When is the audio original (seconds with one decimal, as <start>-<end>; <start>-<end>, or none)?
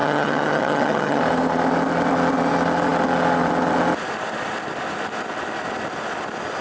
1.2-6.6